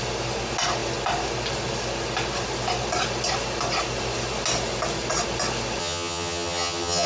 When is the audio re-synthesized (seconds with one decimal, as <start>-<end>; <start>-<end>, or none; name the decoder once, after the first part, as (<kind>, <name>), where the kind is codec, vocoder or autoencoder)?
5.8-7.1 (vocoder, HiFi-GAN)